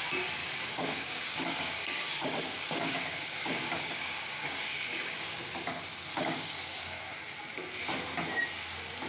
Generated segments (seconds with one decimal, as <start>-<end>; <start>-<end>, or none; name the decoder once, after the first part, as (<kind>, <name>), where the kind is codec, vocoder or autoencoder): 0.4-5.5 (codec, DAC); 6.1-7.1